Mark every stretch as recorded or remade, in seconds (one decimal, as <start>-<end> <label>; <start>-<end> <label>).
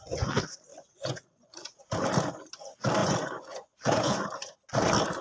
0.0-0.7 recorded; 0.7-1.8 remade; 1.8-3.0 recorded; 3.0-4.2 remade; 4.2-5.2 recorded